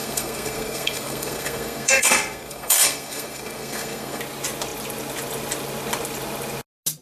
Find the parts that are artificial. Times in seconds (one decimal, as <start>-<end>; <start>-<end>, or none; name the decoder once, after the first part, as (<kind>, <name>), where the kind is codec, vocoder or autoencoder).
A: 0.0-4.2 (codec, SNAC)